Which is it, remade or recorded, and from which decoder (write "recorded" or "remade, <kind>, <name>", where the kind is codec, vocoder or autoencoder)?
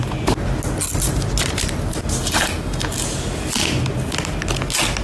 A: recorded